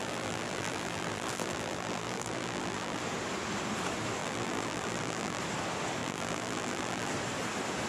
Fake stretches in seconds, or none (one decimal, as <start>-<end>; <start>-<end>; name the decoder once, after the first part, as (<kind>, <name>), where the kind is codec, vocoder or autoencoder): 0.0-3.0 (vocoder, BigVGAN v2); 4.2-5.4; 6.0-7.1